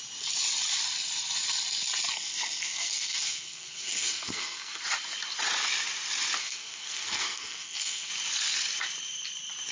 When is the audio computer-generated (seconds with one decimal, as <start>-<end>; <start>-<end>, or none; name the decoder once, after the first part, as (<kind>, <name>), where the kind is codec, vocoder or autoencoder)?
2.1-4.8 (codec, SNAC); 6.4-8.1